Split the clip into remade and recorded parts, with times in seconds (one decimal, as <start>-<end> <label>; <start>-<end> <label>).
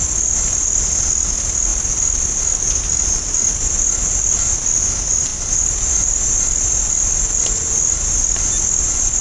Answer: 0.0-5.3 recorded; 5.3-6.6 remade; 6.6-7.4 recorded; 7.4-8.2 remade; 8.2-9.2 recorded